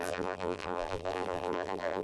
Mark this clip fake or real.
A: fake